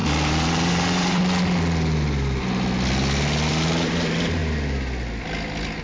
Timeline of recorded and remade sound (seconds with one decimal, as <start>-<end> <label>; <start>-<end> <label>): 0.0-1.2 remade; 1.2-3.5 recorded; 3.5-4.4 remade; 4.4-5.8 recorded